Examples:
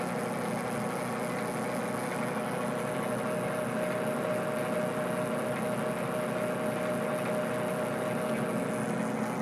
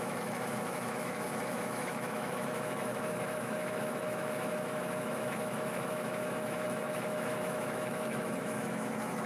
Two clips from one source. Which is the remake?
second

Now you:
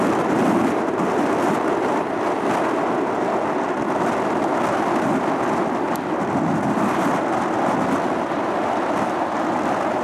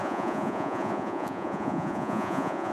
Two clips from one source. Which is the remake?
second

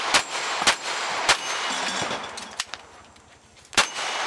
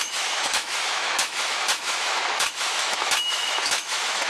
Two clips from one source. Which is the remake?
second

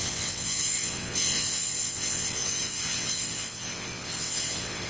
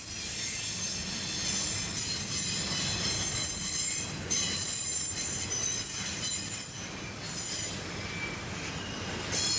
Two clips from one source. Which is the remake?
first